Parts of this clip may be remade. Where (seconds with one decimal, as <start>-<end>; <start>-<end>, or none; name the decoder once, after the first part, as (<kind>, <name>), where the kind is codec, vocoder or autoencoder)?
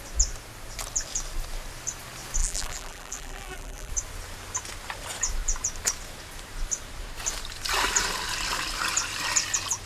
2.4-3.9 (vocoder, BigVGAN v2)